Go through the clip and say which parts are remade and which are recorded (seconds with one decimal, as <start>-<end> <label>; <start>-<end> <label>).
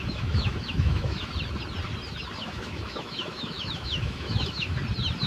0.0-1.3 remade; 1.3-2.4 recorded; 2.4-4.8 remade; 4.8-5.3 recorded